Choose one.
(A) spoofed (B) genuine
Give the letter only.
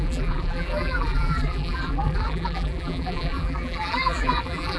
A